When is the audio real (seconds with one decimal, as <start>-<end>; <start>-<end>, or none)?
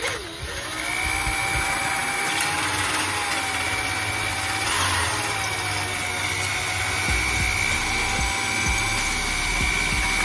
0.0-10.2